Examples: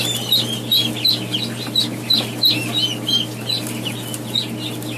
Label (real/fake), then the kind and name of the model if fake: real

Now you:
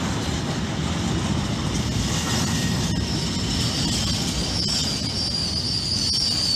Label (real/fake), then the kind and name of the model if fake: real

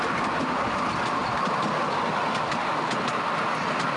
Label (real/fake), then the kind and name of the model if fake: real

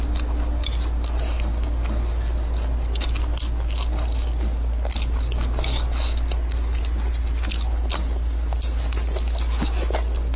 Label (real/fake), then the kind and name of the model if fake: real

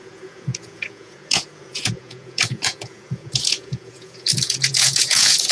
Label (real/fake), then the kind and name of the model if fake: fake, vocoder, Vocos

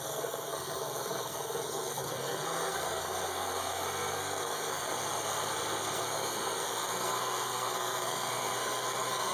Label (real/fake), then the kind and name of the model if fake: fake, codec, SNAC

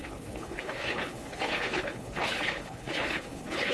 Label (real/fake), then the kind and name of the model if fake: fake, codec, HILCodec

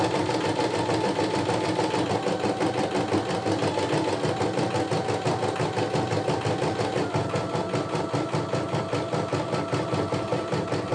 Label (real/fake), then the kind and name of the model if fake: real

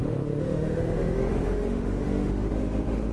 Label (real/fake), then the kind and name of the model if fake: fake, autoencoder, DAC-VAE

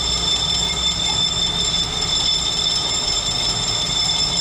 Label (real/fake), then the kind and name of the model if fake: real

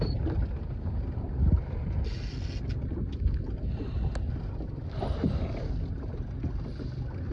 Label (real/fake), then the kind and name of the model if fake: real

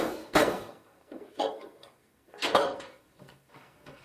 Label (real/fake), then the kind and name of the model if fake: fake, codec, SNAC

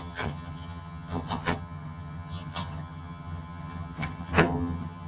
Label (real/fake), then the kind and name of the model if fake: fake, vocoder, HiFi-GAN